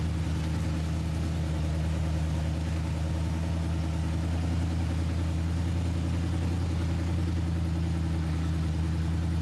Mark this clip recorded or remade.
recorded